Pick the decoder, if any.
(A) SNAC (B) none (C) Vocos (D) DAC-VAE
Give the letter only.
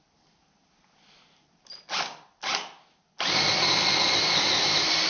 B